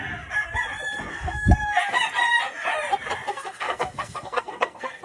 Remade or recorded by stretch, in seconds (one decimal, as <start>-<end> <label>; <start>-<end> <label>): 0.0-1.1 recorded; 1.1-1.8 remade; 1.8-3.3 recorded; 3.3-5.0 remade